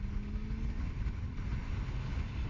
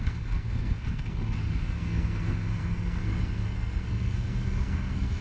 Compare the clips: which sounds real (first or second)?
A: first